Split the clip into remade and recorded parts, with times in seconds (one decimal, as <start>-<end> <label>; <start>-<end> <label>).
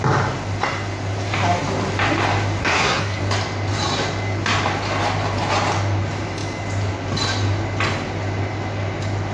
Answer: 0.0-2.6 recorded; 2.6-3.2 remade; 3.2-9.3 recorded